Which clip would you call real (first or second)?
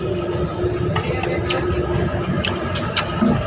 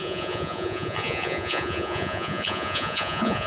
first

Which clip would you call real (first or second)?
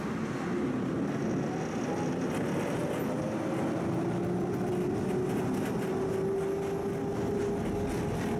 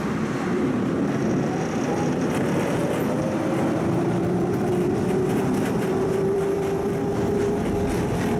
first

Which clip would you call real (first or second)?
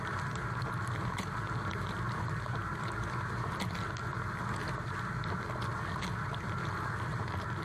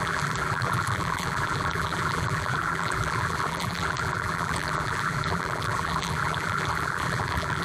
first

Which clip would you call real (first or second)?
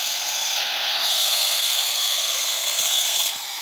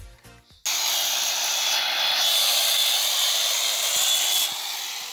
second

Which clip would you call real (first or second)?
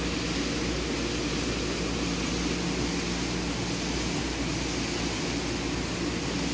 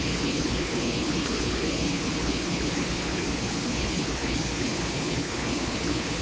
first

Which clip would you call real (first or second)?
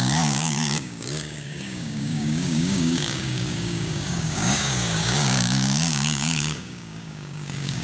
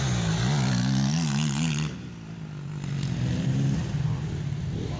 second